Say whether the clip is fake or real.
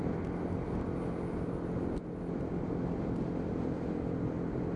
real